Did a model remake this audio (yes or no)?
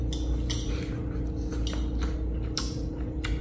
no